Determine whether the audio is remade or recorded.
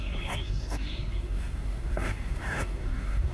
remade